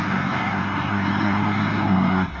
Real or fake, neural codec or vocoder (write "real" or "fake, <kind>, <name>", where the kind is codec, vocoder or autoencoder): fake, codec, SNAC